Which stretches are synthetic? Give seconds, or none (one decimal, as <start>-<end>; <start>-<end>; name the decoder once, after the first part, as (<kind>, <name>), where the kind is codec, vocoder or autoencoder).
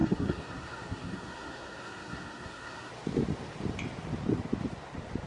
0.0-2.9 (codec, SNAC)